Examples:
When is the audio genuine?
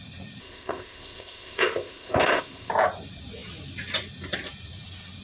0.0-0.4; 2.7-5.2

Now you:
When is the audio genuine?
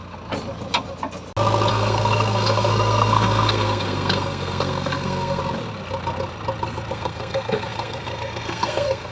0.0-1.7; 5.4-6.9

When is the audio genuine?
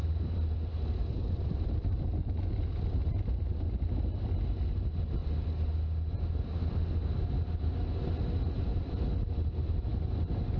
2.7-10.6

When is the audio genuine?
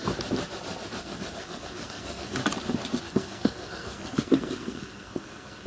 0.0-1.0; 2.4-3.0